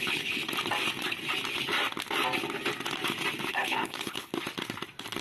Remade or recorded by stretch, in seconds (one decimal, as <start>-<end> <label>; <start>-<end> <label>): 0.0-0.4 remade; 0.4-3.5 recorded; 3.5-4.3 remade; 4.3-5.2 recorded